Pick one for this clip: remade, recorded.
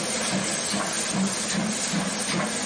recorded